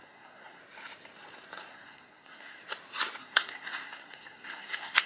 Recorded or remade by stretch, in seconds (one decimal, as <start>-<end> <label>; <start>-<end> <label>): 0.0-0.6 remade; 0.6-1.7 recorded; 1.7-2.6 remade; 2.6-3.2 recorded; 3.2-5.1 remade